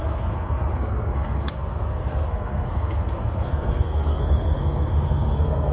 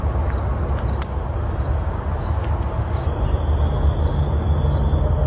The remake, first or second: first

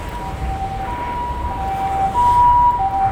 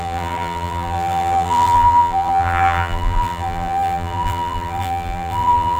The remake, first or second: second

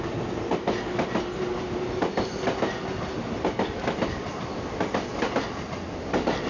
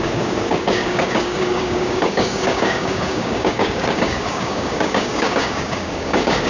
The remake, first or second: second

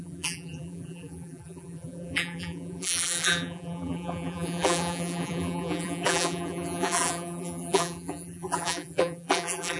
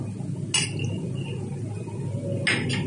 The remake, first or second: first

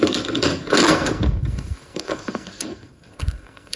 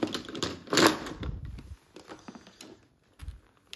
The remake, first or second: first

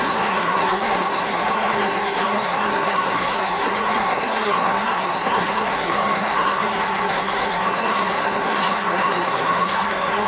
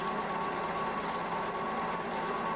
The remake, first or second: first